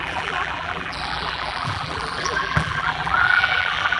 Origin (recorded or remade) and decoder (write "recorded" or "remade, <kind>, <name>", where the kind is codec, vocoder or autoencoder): remade, vocoder, BigVGAN v2